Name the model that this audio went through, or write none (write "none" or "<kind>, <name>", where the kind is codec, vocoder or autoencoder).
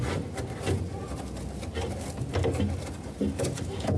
none